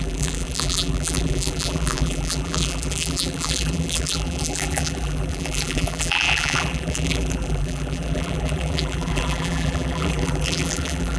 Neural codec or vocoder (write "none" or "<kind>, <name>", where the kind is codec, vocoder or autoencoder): vocoder, BigVGAN v2